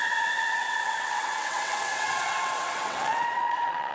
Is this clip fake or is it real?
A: fake